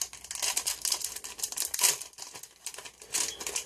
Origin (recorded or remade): recorded